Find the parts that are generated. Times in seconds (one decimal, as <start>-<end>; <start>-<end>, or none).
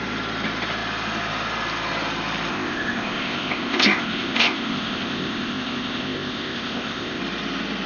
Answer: 2.5-7.2